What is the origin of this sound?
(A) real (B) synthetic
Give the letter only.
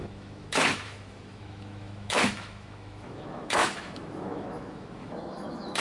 B